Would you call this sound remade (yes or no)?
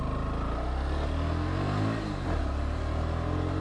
no